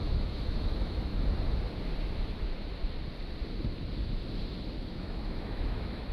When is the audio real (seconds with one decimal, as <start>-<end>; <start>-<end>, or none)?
1.1-4.8